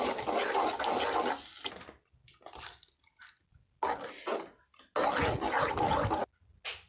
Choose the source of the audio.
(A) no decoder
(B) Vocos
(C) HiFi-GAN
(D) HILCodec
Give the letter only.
A